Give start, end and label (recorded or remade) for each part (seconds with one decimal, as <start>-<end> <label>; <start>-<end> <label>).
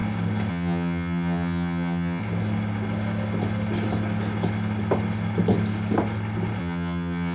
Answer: 0.0-0.5 recorded; 0.5-2.2 remade; 2.2-6.6 recorded; 6.6-7.3 remade